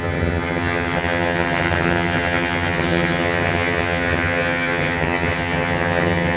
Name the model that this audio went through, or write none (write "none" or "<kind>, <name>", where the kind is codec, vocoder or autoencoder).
vocoder, HiFi-GAN